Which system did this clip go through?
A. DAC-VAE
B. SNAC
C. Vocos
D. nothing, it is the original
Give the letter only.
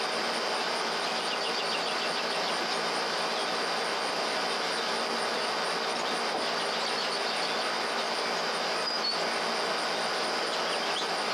D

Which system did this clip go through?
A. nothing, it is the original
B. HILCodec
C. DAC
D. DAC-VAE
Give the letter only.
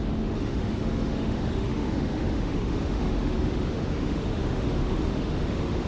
D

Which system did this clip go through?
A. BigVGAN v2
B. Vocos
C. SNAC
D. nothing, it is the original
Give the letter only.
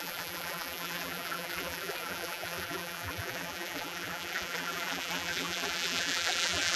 A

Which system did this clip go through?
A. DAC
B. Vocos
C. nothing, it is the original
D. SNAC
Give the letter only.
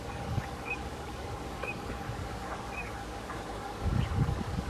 A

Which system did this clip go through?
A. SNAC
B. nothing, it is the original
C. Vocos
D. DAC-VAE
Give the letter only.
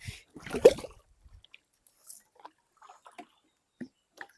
B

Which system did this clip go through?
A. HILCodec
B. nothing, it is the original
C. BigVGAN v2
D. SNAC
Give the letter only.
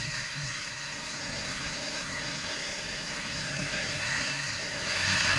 D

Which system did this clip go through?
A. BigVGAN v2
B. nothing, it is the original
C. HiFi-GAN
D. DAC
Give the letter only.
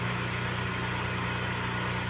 B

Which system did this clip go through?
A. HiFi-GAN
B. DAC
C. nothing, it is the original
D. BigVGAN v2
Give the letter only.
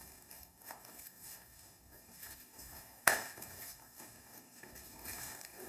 B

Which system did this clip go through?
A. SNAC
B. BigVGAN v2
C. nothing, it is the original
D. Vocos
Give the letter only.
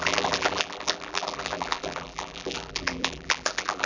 B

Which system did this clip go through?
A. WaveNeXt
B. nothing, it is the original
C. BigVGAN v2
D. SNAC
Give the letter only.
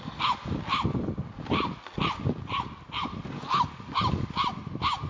B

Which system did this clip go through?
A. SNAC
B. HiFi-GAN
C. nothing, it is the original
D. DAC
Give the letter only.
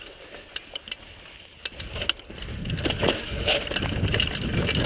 C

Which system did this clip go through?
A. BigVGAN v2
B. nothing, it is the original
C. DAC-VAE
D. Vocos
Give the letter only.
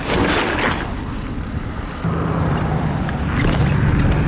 B